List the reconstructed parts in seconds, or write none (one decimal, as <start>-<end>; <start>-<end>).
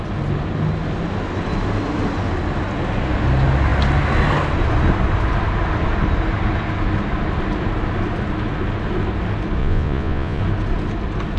9.6-10.4